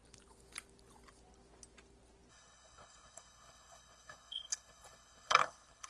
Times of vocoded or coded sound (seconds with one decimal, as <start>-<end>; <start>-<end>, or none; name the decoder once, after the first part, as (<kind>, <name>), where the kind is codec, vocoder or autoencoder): 2.3-5.9 (codec, HILCodec)